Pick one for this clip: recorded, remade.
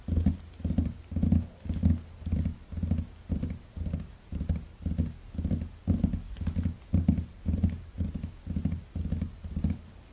recorded